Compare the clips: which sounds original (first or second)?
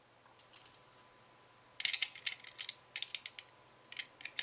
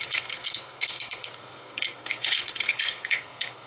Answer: first